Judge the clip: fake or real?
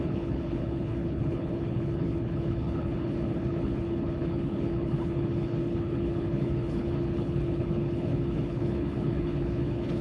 fake